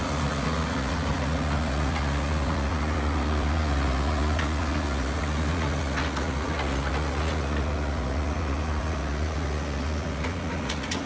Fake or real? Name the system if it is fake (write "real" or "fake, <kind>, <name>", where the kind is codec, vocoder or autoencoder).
fake, vocoder, Vocos